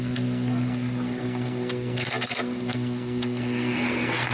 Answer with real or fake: fake